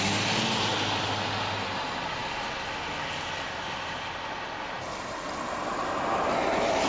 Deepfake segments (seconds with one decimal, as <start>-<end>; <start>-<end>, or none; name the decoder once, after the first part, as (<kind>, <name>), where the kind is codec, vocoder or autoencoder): none